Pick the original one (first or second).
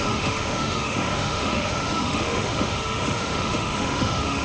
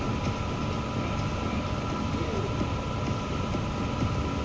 second